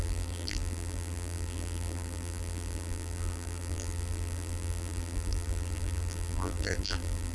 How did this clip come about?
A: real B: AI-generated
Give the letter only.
B